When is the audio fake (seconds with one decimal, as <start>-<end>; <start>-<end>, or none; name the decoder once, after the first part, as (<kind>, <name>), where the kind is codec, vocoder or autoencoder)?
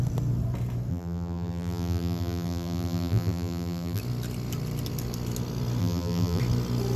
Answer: 0.9-4.0 (vocoder, BigVGAN v2); 5.8-6.4